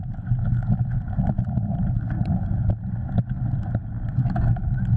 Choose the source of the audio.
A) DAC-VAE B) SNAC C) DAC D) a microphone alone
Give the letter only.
D